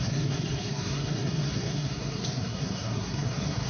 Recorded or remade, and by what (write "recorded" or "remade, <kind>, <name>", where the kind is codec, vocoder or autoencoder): remade, codec, SNAC